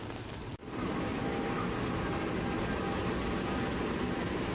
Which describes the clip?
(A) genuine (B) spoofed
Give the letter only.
A